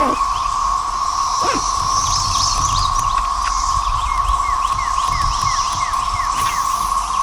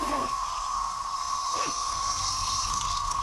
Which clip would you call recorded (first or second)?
first